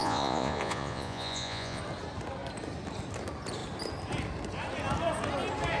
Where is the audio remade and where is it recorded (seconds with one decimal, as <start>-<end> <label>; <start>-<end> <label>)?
0.0-1.8 remade; 1.8-5.8 recorded